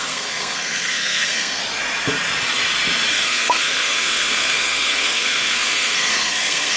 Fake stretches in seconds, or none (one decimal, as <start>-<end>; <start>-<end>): 0.0-1.6; 3.1-6.8